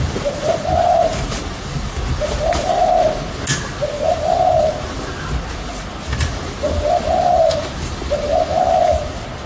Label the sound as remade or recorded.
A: recorded